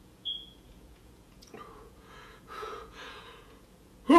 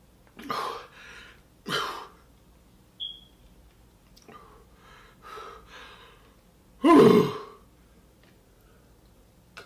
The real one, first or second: second